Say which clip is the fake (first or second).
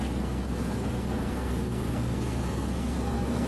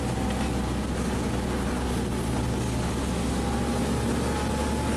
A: first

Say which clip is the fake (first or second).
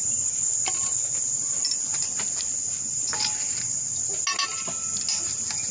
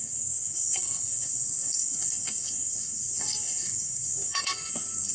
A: second